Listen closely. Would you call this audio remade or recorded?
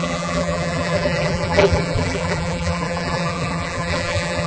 remade